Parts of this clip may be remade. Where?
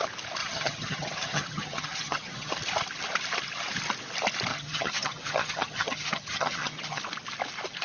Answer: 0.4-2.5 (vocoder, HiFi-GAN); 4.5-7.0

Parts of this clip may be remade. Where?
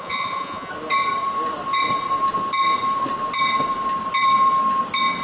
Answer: 0.0-0.7 (vocoder, Vocos)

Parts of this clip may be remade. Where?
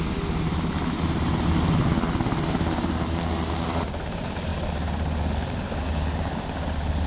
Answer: none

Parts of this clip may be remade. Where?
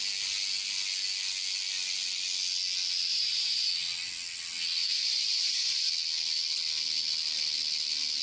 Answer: 3.1-3.7 (vocoder, BigVGAN v2); 4.8-5.9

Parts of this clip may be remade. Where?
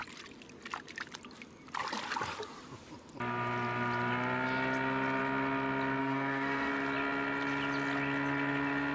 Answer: 6.0-6.7 (codec, SNAC)